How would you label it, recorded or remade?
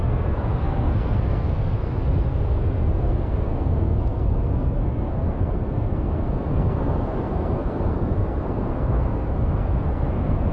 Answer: remade